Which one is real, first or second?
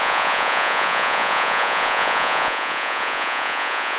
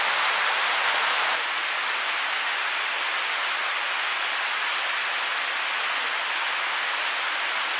second